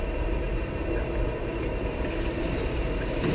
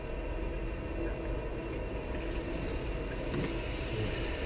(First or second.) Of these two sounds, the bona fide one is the second